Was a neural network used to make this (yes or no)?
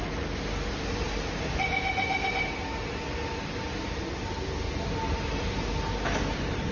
no